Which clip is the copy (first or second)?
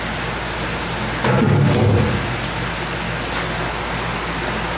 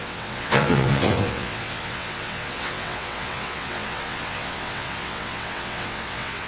second